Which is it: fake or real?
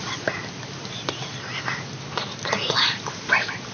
real